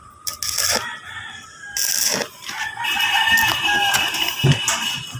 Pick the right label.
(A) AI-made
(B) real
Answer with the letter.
B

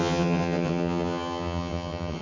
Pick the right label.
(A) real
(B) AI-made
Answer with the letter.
B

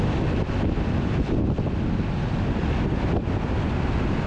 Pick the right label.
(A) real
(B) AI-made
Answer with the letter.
A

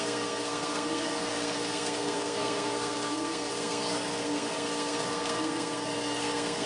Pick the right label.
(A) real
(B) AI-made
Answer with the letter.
B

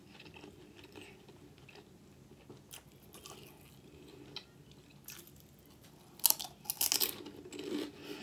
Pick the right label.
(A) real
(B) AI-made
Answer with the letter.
A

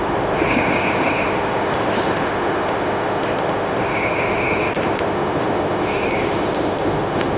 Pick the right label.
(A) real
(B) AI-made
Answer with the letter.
B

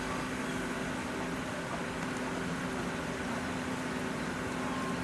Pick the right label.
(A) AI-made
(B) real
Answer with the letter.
B